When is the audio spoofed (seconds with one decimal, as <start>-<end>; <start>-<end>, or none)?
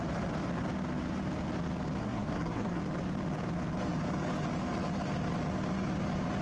2.0-2.8